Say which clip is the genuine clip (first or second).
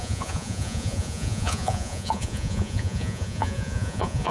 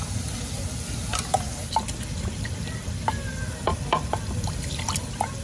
second